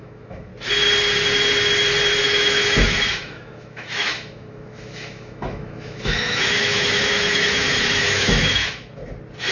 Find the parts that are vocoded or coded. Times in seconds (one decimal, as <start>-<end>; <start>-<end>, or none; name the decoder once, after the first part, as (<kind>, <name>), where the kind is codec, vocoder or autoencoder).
0.0-0.5 (autoencoder, DAC-VAE); 2.2-9.0